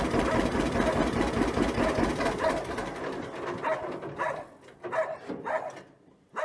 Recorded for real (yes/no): yes